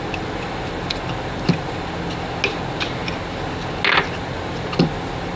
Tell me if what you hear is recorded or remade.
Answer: recorded